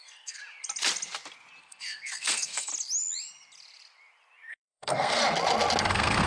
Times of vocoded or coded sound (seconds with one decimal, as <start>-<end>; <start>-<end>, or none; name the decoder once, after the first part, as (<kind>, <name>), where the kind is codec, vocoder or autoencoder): 0.0-0.4 (codec, SNAC); 1.6-2.7; 4.5-5.2; 5.8-6.3